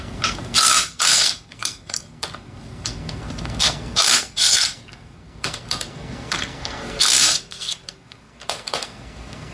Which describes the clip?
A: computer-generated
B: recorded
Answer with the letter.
A